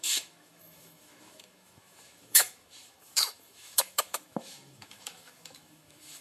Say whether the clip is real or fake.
fake